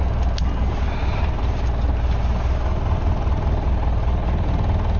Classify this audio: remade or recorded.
recorded